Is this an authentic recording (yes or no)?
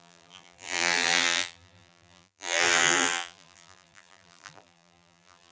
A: no